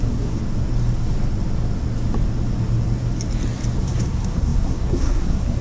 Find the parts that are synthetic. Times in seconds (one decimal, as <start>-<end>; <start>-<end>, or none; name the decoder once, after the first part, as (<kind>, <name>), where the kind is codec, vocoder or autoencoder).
0.0-0.4 (codec, SNAC); 3.8-5.6